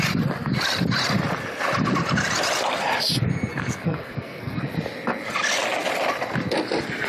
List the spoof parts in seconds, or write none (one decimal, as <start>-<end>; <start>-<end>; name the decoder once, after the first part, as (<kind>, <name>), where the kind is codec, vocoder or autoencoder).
3.5-4.6 (codec, SNAC)